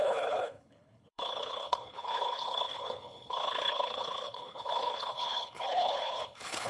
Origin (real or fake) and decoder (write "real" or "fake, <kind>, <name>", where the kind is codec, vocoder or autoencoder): fake, codec, HILCodec